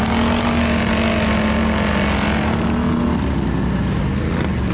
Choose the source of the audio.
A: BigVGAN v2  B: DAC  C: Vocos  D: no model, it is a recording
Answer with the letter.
D